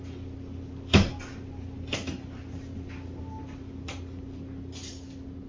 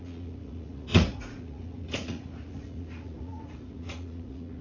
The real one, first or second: first